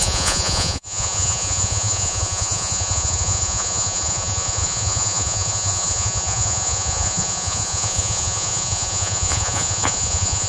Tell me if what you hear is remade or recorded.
remade